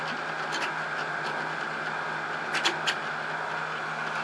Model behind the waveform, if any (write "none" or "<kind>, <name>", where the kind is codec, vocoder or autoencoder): none